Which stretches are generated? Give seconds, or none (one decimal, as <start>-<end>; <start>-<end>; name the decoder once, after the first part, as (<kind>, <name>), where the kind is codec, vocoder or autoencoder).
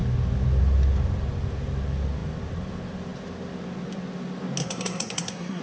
4.6-5.6 (codec, SNAC)